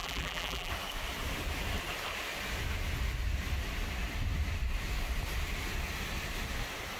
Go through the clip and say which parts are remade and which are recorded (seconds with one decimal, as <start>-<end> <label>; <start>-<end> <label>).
0.0-0.7 remade; 0.7-7.0 recorded